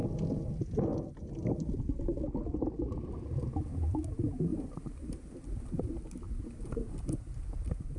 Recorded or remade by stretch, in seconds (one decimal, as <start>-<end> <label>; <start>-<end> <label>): 0.0-4.5 recorded; 4.5-8.0 remade